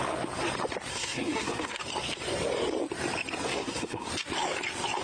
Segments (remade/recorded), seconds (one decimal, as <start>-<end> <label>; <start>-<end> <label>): 0.0-0.9 recorded; 0.9-1.8 remade; 1.8-3.5 recorded; 3.5-4.1 remade; 4.1-5.0 recorded